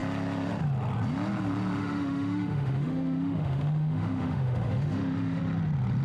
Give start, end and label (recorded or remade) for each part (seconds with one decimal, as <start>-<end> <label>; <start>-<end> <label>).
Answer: 0.0-1.8 recorded; 1.8-5.4 remade; 5.4-6.0 recorded